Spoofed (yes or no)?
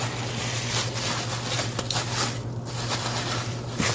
no